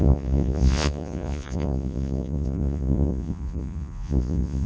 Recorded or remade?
remade